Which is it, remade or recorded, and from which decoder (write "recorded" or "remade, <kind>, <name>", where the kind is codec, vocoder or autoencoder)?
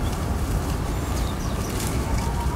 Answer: recorded